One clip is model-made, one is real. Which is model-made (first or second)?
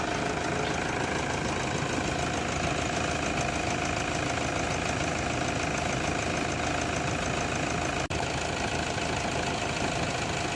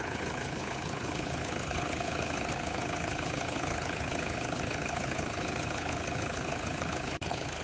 second